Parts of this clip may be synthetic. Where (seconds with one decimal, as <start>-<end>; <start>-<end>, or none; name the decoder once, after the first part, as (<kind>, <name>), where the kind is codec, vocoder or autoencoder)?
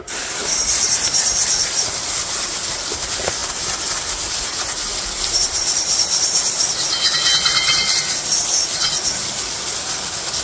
0.4-2.2 (vocoder, BigVGAN v2); 3.4-6.7